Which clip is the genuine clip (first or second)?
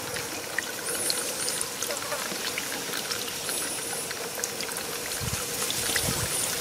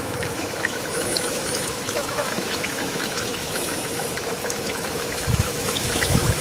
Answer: first